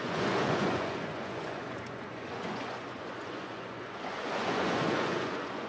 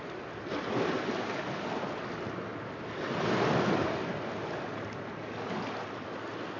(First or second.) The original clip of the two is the second